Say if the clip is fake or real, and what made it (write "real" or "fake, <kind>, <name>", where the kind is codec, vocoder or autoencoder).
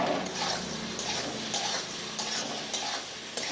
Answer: real